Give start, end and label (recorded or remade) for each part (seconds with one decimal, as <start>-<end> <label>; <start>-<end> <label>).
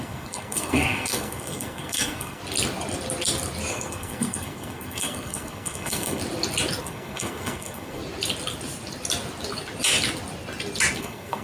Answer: 0.0-2.4 remade; 2.4-3.7 recorded; 3.7-6.2 remade; 6.2-6.8 recorded; 6.8-8.0 remade; 8.0-11.0 recorded; 11.0-11.4 remade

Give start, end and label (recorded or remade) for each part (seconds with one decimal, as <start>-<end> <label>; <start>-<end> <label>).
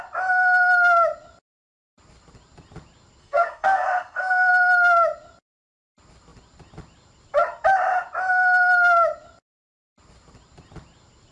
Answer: 0.0-3.2 recorded; 3.2-4.5 remade; 4.5-11.3 recorded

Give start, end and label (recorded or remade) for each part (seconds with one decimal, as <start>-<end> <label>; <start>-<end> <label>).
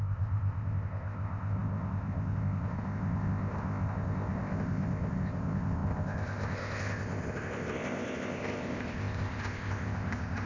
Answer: 0.0-10.5 remade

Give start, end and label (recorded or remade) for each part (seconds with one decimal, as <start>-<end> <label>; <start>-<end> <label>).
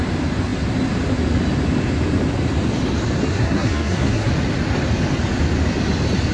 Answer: 0.0-3.3 recorded; 3.3-4.3 remade; 4.3-6.3 recorded